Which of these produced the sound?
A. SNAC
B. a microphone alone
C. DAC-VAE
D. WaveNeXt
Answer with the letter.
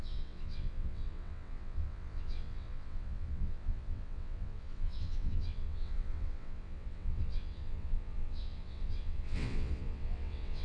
D